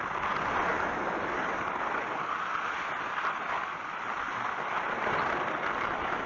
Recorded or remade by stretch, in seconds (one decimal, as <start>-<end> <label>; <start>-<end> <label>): 0.0-6.3 recorded